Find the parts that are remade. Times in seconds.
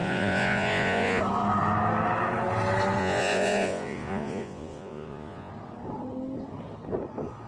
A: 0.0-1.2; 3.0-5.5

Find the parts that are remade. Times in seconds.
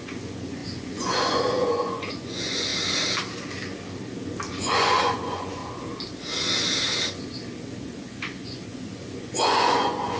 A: 0.0-2.7; 4.5-5.6; 7.8-10.2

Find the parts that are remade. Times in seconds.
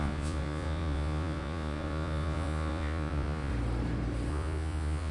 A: 0.0-3.5; 4.3-5.1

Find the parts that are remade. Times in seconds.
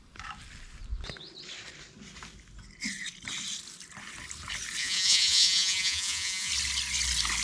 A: 4.8-6.5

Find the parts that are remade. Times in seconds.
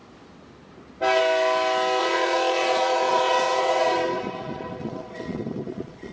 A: 2.0-6.1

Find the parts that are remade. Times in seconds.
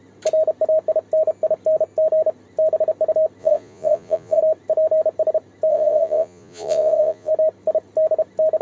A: 3.4-4.4; 5.7-7.3